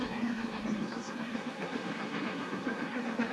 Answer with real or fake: fake